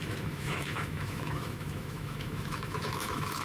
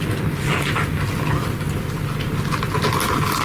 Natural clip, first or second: second